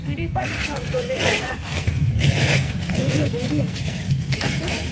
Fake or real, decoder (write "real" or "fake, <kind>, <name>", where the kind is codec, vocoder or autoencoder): fake, codec, SNAC